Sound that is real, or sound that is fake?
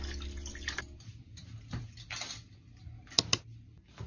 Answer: real